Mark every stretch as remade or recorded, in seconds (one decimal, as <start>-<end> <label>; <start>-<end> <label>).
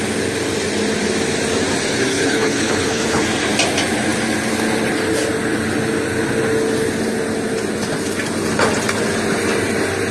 0.0-2.1 recorded; 2.1-3.2 remade; 3.2-10.1 recorded